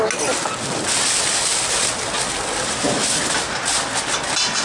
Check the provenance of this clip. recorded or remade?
recorded